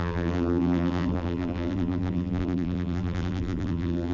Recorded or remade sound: remade